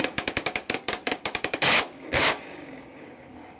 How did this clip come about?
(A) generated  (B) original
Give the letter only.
A